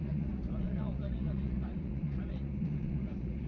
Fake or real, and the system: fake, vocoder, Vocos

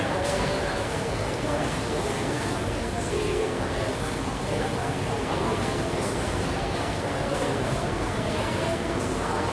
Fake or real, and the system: fake, codec, SNAC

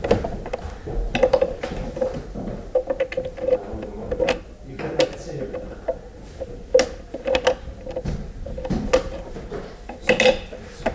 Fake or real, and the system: real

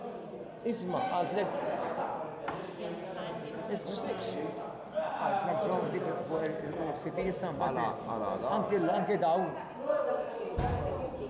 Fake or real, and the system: real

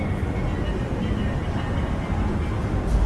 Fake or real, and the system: fake, vocoder, BigVGAN v2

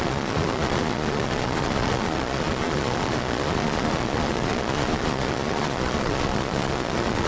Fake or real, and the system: fake, vocoder, Vocos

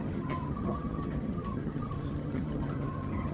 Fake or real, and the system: fake, vocoder, HiFi-GAN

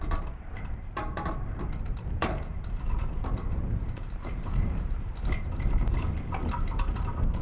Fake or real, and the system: fake, vocoder, BigVGAN v2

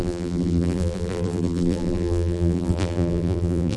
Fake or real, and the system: fake, vocoder, BigVGAN v2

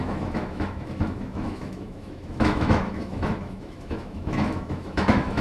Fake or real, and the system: fake, autoencoder, DAC-VAE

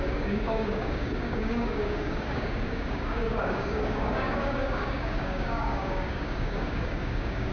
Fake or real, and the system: fake, codec, DAC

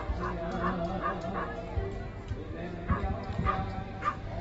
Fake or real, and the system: real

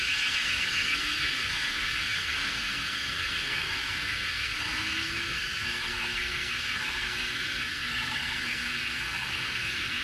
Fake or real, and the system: fake, codec, SNAC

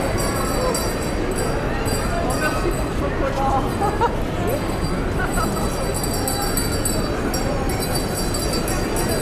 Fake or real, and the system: real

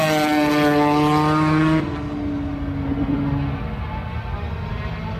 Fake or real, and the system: real